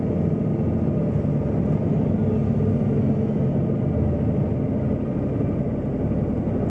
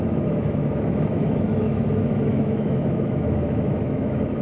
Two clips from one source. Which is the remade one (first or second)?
second